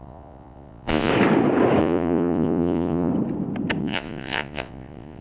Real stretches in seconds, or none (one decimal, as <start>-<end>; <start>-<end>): 1.1-1.8; 3.1-3.8